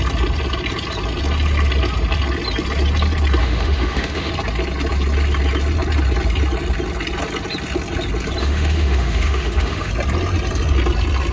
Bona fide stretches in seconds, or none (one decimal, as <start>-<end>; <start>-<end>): 0.0-3.4; 4.3-8.4; 9.9-11.3